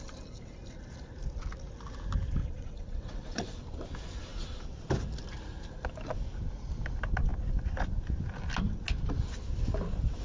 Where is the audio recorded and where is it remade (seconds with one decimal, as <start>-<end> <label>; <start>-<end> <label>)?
0.0-2.4 recorded; 2.4-3.6 remade; 3.6-10.2 recorded